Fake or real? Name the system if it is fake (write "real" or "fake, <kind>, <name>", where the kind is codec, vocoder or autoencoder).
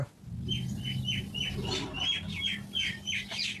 real